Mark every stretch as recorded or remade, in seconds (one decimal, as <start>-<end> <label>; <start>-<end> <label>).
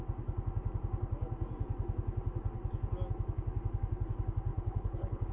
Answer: 0.0-4.5 recorded; 4.5-5.3 remade